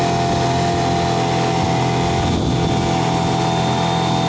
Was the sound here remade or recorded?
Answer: recorded